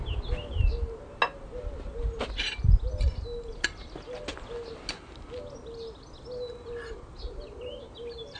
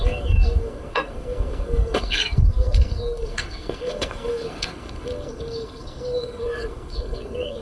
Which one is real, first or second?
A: first